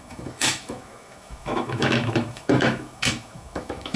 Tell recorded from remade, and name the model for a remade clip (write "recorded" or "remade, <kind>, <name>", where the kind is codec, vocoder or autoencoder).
remade, autoencoder, DAC-VAE